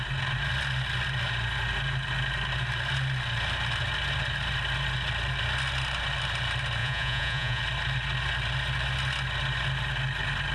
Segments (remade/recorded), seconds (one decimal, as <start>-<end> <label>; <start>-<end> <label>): 0.0-6.8 recorded; 6.8-7.6 remade; 7.6-10.5 recorded